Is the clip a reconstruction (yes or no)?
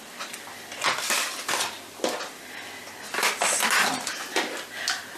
no